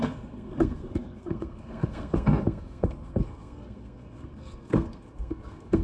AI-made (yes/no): yes